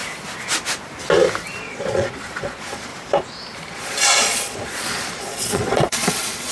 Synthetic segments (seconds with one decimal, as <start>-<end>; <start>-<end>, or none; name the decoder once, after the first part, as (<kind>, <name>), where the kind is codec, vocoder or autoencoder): 1.6-2.9 (vocoder, Vocos); 3.7-6.5